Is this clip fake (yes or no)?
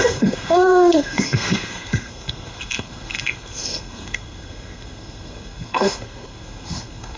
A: yes